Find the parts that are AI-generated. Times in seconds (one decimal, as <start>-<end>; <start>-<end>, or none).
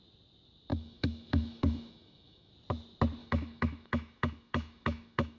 0.7-2.5; 3.2-5.4